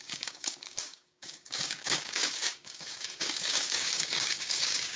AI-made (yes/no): yes